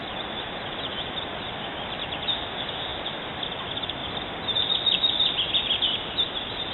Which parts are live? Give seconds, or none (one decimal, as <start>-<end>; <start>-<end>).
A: 0.0-6.7